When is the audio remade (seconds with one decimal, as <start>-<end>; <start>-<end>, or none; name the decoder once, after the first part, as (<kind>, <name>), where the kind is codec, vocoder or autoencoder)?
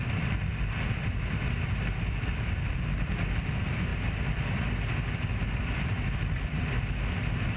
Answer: 3.9-4.4 (vocoder, BigVGAN v2)